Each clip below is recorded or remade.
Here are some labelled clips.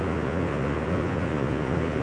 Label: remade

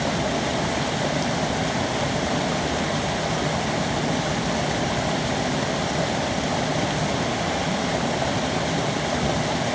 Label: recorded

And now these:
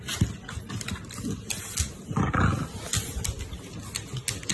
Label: recorded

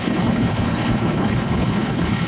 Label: remade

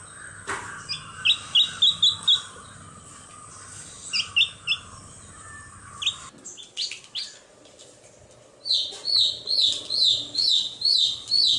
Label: recorded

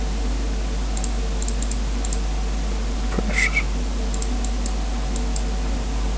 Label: recorded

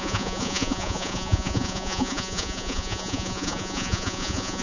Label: remade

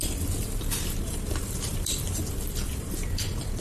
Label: remade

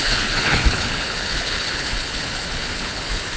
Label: remade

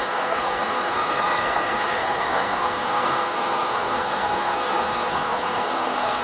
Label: remade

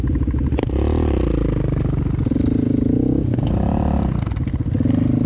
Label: recorded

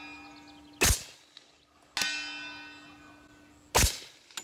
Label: recorded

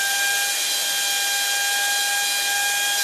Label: recorded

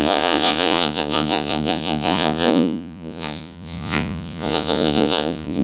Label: remade